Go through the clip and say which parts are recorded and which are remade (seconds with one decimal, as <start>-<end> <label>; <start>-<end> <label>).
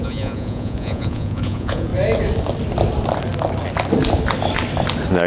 0.0-1.9 remade; 1.9-5.3 recorded